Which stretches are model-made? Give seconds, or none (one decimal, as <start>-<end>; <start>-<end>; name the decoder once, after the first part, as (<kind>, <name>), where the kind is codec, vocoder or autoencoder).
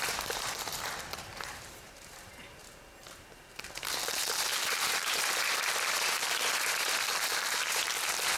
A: 1.3-2.3 (vocoder, BigVGAN v2); 3.0-3.6; 4.5-7.8